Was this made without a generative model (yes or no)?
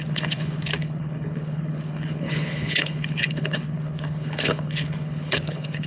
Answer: no